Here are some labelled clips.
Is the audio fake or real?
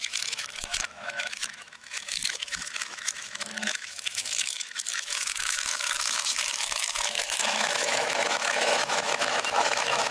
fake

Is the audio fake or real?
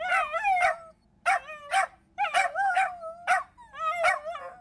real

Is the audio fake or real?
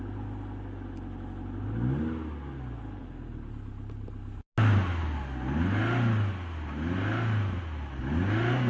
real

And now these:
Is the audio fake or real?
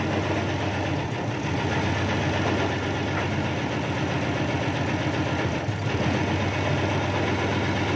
real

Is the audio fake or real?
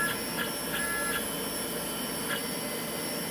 real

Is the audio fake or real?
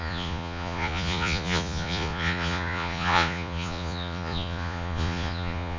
fake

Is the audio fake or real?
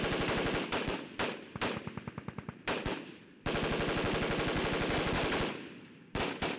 real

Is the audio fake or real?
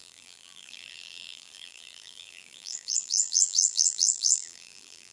fake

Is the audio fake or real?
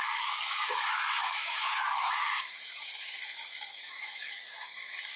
fake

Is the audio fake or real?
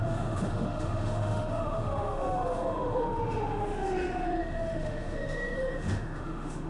fake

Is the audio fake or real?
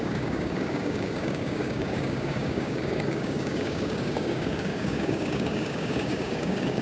fake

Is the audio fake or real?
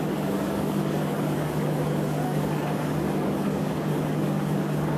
fake